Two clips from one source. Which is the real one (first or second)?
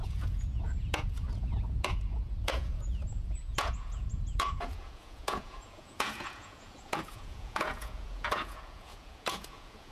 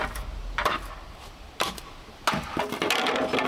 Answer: second